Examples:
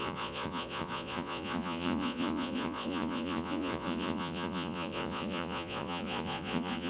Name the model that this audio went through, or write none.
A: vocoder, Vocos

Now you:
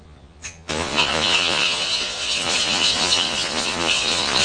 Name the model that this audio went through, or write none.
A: vocoder, Vocos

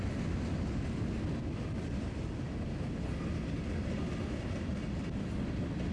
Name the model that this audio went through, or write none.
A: none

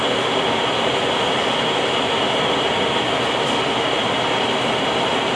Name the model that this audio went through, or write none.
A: none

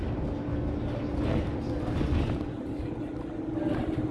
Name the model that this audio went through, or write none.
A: none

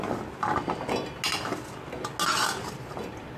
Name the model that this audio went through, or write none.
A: none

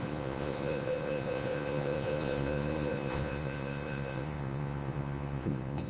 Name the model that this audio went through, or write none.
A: vocoder, Vocos